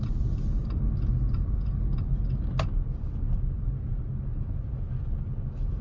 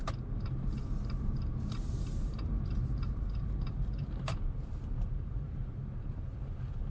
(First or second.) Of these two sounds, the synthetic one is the second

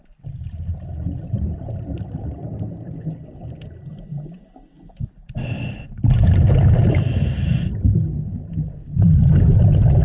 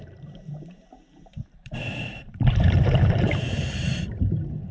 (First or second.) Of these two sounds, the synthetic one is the second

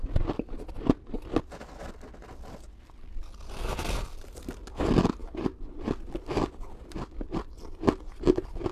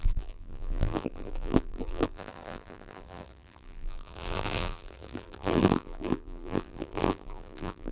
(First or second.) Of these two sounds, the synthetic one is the second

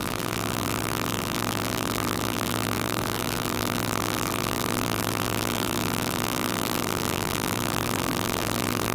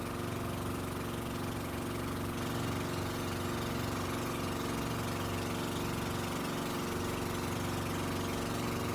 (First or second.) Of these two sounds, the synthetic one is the first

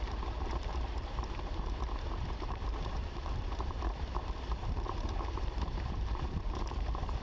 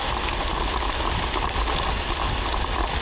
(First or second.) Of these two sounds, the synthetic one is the first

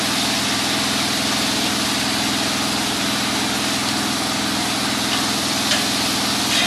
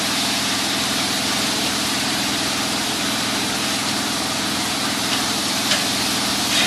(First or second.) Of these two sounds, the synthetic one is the second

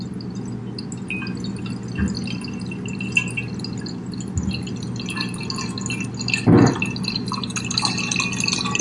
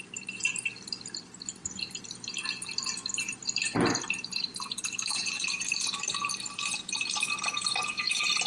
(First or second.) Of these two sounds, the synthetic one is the second